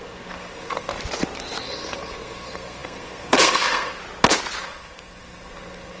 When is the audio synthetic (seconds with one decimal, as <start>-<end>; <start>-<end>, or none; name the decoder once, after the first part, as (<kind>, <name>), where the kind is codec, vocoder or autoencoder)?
0.0-0.9 (codec, SNAC); 1.6-4.0; 4.6-6.0